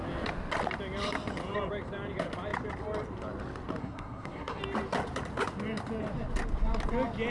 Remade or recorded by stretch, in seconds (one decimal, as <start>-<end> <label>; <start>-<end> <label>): 0.0-3.8 recorded; 3.8-4.6 remade; 4.6-7.3 recorded